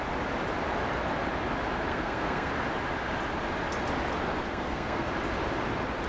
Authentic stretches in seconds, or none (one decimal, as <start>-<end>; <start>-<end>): 0.0-1.9; 2.5-4.5; 5.1-6.1